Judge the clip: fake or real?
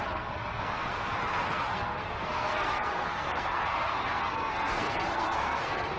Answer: fake